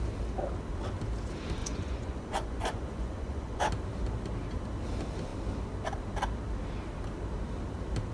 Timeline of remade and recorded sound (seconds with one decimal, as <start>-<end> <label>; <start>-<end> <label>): 0.0-1.6 recorded; 1.6-3.7 remade; 3.7-8.1 recorded